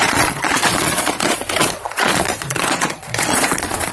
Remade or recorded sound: remade